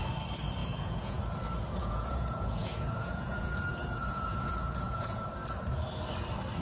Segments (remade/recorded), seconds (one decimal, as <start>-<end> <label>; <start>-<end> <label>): 0.0-0.6 recorded; 0.6-1.2 remade; 1.2-1.8 recorded; 1.8-5.2 remade; 5.2-6.6 recorded